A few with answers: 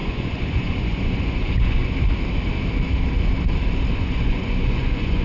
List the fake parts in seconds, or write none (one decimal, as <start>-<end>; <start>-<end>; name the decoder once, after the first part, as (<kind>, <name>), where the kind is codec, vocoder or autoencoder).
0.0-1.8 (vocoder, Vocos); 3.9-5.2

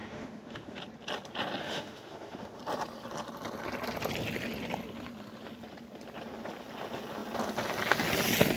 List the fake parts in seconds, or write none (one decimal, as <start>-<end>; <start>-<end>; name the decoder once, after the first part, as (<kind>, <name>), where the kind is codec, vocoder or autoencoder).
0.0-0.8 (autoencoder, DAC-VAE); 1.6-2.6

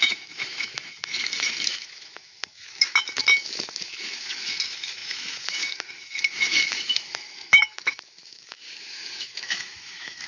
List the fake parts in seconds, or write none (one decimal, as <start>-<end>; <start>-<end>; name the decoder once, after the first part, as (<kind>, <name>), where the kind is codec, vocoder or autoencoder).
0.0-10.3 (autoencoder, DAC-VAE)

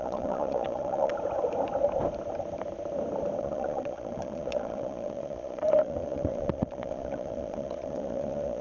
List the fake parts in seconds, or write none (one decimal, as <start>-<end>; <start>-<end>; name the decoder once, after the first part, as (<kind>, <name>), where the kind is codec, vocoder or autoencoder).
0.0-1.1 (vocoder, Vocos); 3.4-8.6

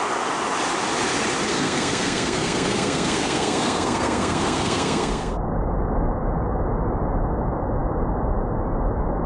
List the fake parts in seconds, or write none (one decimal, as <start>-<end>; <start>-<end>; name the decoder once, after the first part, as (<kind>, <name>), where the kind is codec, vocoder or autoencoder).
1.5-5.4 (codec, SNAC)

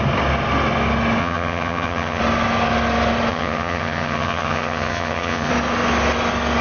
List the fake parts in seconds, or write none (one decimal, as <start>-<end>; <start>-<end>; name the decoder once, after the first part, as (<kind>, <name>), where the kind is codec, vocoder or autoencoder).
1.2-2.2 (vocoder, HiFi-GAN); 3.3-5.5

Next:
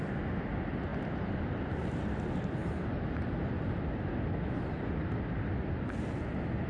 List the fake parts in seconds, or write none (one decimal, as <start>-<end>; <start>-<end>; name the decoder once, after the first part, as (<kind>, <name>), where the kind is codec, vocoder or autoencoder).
none

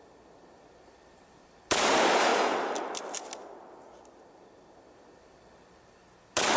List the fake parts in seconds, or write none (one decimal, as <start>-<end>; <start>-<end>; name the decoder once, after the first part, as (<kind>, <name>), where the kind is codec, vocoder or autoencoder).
0.0-2.3 (vocoder, BigVGAN v2)